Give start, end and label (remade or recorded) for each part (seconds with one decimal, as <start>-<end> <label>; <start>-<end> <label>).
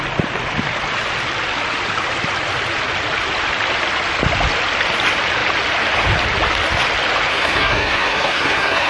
0.0-7.3 recorded; 7.3-8.9 remade